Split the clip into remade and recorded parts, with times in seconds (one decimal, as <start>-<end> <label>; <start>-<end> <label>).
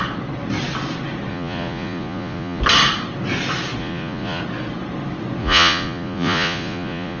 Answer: 0.0-1.3 recorded; 1.3-2.6 remade; 2.6-3.8 recorded; 3.8-4.4 remade; 4.4-5.4 recorded; 5.4-7.2 remade